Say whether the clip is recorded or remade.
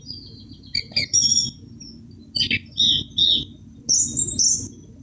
recorded